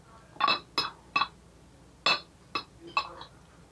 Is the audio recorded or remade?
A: recorded